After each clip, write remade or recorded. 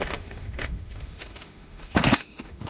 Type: remade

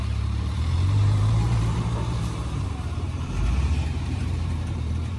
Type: remade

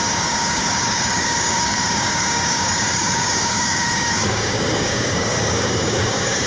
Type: remade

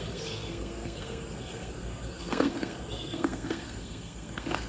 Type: remade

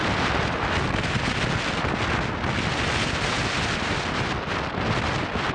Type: recorded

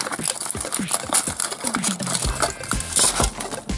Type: recorded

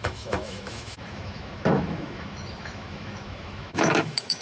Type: remade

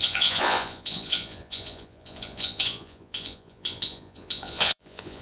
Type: remade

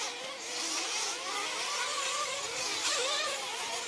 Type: recorded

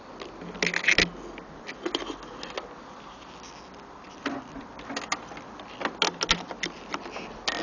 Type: recorded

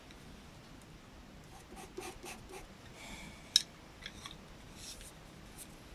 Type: recorded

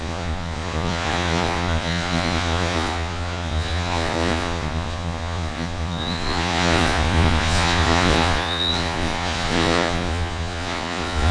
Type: remade